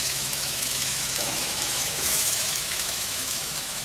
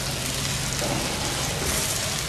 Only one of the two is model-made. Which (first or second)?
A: first